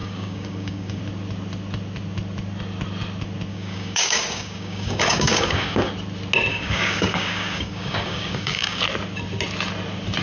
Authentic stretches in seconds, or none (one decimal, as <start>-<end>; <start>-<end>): 1.0-3.5; 5.9-6.5; 8.8-10.2